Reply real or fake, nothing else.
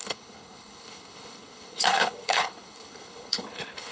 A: fake